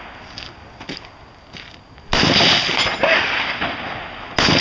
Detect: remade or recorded recorded